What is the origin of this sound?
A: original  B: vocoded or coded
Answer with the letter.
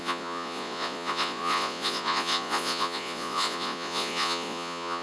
B